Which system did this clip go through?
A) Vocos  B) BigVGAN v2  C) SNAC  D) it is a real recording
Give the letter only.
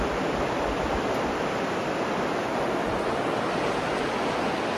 D